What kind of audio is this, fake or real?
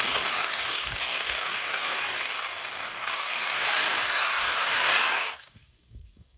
fake